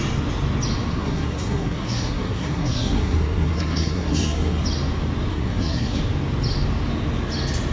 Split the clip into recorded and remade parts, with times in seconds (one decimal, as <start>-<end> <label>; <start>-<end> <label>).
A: 0.0-0.9 recorded; 0.9-4.6 remade; 4.6-5.3 recorded; 5.3-6.0 remade; 6.0-7.7 recorded